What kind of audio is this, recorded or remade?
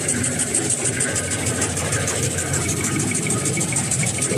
recorded